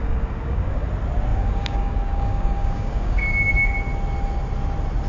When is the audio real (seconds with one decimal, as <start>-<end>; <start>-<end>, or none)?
0.9-1.3; 3.5-5.1